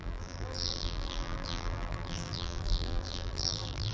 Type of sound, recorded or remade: remade